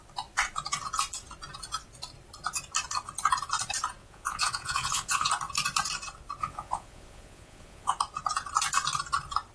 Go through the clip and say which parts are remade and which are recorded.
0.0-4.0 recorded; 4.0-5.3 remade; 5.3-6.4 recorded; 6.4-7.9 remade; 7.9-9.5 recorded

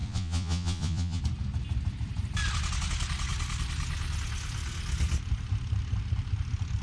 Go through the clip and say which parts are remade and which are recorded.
0.0-1.2 remade; 1.2-6.8 recorded

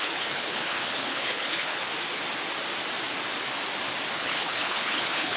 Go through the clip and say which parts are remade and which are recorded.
0.0-1.8 remade; 1.8-4.1 recorded; 4.1-5.4 remade

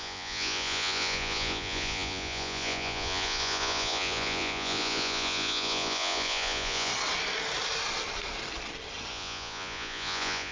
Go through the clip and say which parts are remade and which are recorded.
0.0-6.9 remade; 6.9-9.1 recorded; 9.1-10.5 remade

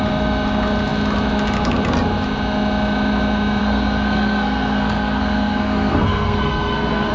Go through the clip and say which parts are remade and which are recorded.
0.0-3.6 recorded; 3.6-7.1 remade

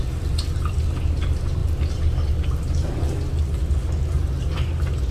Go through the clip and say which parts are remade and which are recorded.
0.0-5.1 recorded